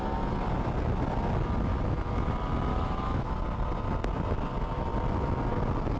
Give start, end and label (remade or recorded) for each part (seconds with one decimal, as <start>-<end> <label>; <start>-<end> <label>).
0.0-1.7 recorded; 1.7-2.3 remade; 2.3-2.7 recorded; 2.7-3.4 remade; 3.4-6.0 recorded